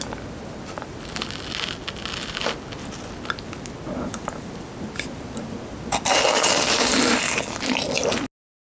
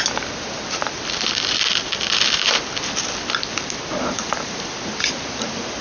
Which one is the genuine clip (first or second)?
first